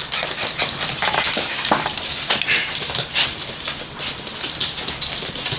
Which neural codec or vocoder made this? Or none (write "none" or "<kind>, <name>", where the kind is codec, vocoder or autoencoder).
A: none